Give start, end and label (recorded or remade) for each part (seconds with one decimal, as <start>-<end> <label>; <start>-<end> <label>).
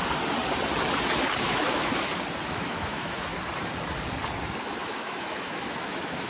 0.0-1.4 recorded; 1.4-1.9 remade; 1.9-2.4 recorded; 2.4-3.3 remade; 3.3-4.8 recorded; 4.8-6.3 remade